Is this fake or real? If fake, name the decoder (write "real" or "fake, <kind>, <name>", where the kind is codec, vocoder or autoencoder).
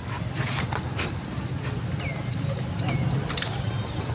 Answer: real